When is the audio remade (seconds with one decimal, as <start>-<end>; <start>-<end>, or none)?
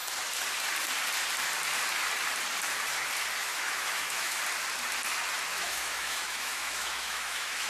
3.4-4.4; 5.5-7.7